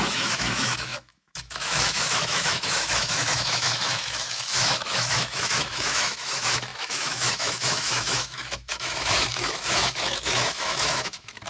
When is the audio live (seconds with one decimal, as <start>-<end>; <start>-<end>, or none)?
none